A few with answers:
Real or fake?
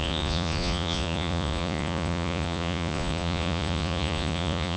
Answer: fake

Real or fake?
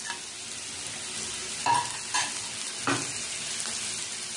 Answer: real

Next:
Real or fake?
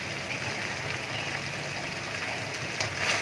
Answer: real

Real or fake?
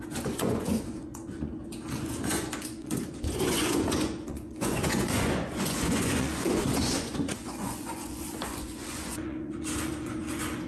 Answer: fake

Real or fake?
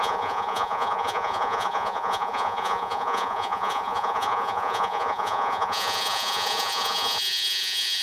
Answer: fake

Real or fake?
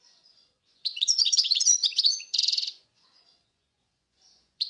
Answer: fake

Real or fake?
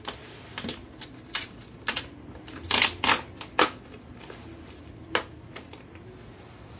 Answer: real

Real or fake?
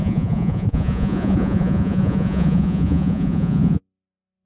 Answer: fake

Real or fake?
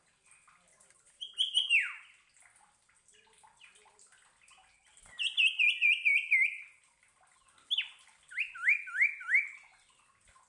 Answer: real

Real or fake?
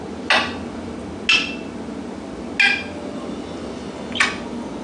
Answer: real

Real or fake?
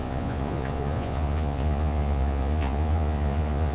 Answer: fake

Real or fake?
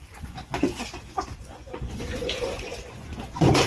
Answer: fake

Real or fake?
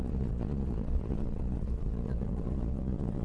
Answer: fake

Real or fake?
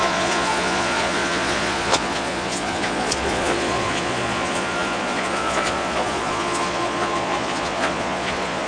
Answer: fake